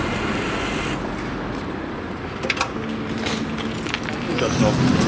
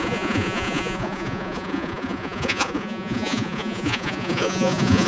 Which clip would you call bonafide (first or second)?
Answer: first